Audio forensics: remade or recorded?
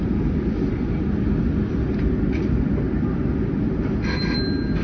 recorded